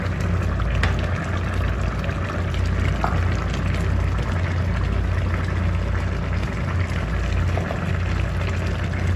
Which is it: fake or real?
real